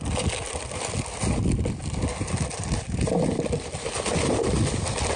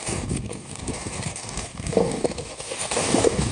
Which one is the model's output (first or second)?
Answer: second